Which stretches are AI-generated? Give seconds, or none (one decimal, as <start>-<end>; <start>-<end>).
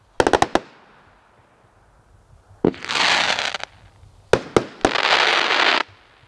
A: none